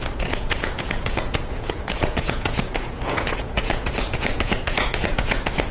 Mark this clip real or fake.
fake